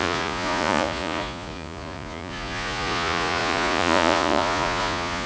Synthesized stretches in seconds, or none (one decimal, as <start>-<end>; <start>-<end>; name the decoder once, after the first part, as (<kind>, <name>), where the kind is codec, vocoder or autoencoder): 0.0-5.3 (vocoder, Vocos)

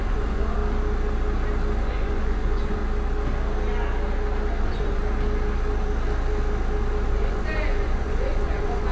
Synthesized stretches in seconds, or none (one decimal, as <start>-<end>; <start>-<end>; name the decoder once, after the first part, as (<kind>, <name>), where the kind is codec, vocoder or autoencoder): 0.0-0.6 (vocoder, Vocos); 1.8-2.8; 4.6-5.0; 7.1-8.9

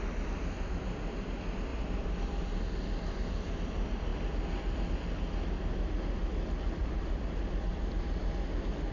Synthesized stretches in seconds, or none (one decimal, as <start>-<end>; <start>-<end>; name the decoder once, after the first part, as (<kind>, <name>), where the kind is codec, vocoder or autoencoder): 1.7-2.6 (vocoder, BigVGAN v2); 6.8-8.2

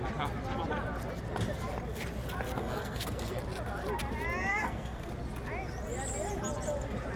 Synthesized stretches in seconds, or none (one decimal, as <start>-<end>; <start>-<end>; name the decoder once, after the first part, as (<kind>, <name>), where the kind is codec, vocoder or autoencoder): 2.6-3.4 (codec, SNAC); 4.5-5.1